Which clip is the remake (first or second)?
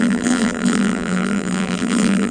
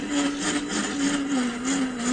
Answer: first